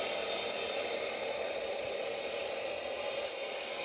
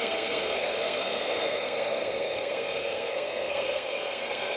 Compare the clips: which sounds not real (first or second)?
second